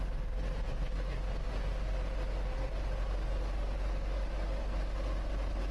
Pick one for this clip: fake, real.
real